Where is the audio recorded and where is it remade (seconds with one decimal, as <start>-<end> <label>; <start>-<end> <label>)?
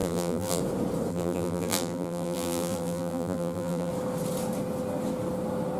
0.0-0.6 remade; 0.6-1.1 recorded; 1.1-3.9 remade; 3.9-5.8 recorded